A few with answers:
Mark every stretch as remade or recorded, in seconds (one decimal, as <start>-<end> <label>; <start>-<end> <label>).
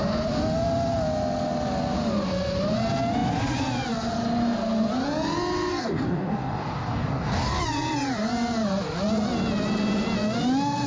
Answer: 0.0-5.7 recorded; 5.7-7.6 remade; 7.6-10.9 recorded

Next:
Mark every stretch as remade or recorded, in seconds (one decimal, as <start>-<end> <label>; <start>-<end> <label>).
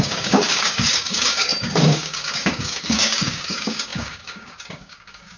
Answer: 0.0-5.4 remade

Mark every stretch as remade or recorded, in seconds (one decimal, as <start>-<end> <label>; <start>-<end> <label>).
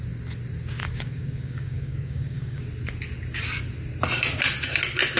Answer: 0.0-0.8 recorded; 0.8-2.6 remade; 2.6-5.2 recorded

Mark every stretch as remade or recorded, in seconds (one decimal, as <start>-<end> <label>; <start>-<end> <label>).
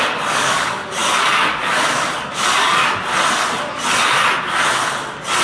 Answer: 0.0-2.8 remade; 2.8-5.4 recorded